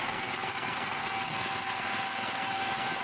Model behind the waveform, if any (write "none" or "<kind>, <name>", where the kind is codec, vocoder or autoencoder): codec, SNAC